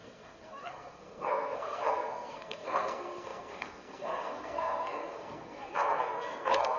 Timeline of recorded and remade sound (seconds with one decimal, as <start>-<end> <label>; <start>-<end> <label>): 0.0-6.8 remade